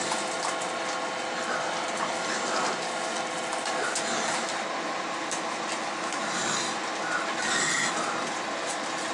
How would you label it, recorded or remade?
recorded